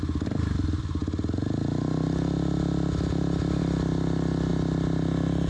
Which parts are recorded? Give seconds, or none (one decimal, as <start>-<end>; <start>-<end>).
0.0-5.5